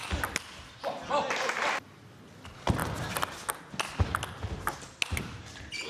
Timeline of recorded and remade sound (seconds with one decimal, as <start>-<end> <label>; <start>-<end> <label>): 0.0-5.9 recorded

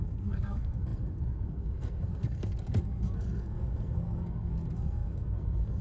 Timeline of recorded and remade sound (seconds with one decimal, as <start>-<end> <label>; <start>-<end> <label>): 0.0-5.8 remade

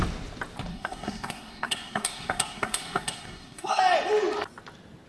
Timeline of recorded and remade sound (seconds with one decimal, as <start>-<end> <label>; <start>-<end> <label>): 0.0-0.7 recorded; 0.7-3.8 remade; 3.8-5.1 recorded

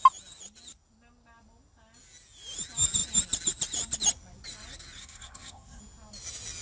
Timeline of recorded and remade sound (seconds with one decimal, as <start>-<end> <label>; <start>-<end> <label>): 0.0-5.0 recorded; 5.0-5.8 remade; 5.8-6.6 recorded

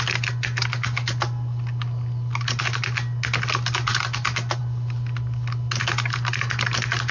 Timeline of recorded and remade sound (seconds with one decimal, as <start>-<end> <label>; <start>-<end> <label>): 0.0-7.1 recorded

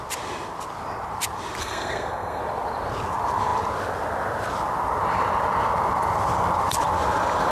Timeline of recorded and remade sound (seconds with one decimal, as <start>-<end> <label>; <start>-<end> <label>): 0.0-1.6 recorded; 1.6-2.4 remade; 2.4-7.5 recorded